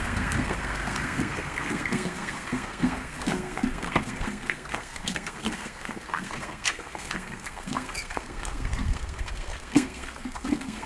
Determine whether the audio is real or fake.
fake